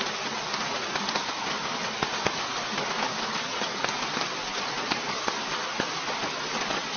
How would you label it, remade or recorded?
recorded